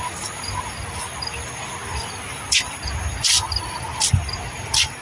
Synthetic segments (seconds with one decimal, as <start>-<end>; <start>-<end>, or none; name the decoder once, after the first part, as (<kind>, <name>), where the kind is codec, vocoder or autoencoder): none

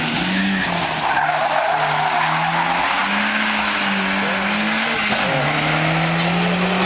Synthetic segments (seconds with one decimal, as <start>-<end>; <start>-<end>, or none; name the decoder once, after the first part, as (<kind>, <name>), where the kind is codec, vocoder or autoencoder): none

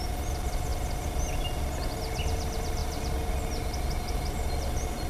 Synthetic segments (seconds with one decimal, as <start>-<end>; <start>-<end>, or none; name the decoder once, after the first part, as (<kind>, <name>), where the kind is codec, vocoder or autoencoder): none

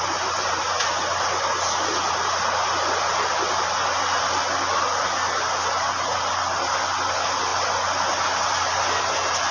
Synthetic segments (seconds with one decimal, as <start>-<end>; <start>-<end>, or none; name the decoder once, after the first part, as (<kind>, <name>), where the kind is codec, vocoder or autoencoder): none

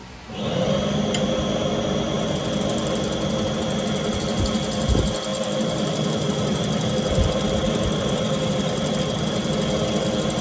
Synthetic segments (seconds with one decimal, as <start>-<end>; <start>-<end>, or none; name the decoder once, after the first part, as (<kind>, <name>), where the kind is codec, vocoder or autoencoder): 5.3-9.0 (vocoder, BigVGAN v2)

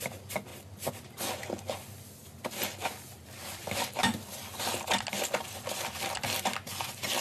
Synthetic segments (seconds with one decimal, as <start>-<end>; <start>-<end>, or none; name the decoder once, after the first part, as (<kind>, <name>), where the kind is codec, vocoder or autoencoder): none

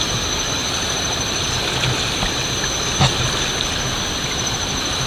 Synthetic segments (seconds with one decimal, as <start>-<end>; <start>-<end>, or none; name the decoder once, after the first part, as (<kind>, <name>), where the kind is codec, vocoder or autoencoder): 4.2-5.1 (vocoder, BigVGAN v2)